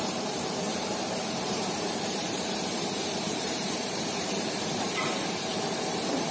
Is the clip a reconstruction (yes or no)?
yes